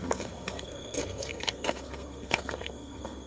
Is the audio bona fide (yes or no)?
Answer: no